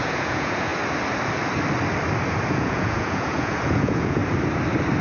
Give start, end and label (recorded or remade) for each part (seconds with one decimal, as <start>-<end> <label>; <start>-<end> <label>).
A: 0.0-0.7 remade; 0.7-2.5 recorded; 2.5-4.2 remade; 4.2-5.0 recorded